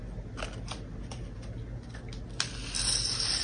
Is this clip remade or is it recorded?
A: recorded